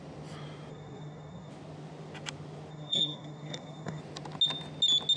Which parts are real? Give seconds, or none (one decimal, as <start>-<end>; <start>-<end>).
0.0-0.7; 1.5-2.7; 4.0-5.2